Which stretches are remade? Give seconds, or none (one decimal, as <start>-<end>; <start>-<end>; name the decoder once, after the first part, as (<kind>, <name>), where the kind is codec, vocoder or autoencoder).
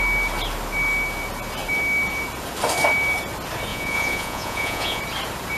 3.7-5.0 (vocoder, Vocos)